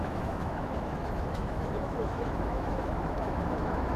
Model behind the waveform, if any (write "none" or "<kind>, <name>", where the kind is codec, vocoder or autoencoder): autoencoder, DAC-VAE